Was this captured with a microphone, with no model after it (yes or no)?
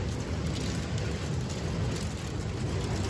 yes